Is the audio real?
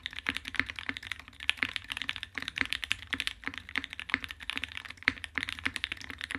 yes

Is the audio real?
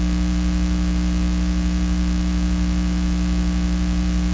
no